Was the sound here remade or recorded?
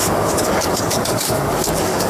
remade